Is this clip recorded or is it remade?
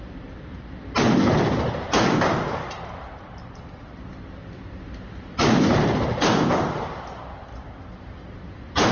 recorded